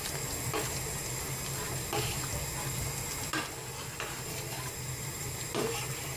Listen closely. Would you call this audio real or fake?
real